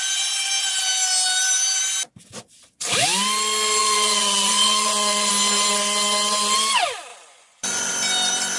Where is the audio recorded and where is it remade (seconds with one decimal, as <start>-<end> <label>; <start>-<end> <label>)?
0.0-3.8 recorded; 3.8-5.3 remade; 5.3-7.1 recorded; 7.1-7.9 remade; 7.9-8.6 recorded